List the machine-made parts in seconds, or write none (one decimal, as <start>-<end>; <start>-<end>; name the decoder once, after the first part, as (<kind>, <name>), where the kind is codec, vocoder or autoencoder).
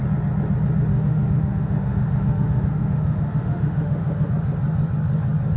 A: 0.9-4.3 (autoencoder, DAC-VAE)